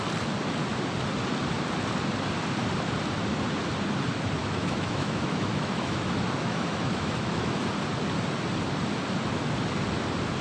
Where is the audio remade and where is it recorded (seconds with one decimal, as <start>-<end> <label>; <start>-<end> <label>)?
0.0-4.4 recorded; 4.4-7.6 remade; 7.6-10.4 recorded